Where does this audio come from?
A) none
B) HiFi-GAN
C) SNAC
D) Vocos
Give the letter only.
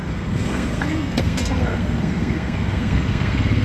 C